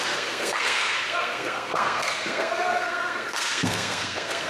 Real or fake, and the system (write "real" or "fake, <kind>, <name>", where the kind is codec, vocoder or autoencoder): fake, codec, SNAC